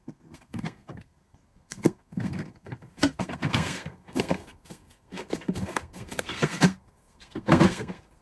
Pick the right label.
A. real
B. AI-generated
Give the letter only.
B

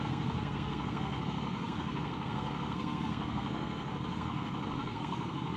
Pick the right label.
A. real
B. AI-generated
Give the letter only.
B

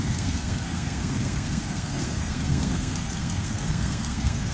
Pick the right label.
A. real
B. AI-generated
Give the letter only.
B